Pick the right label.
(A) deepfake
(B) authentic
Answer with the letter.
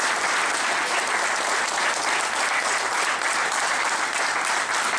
B